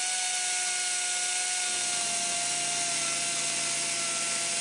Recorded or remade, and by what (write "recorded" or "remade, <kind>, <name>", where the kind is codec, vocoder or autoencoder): recorded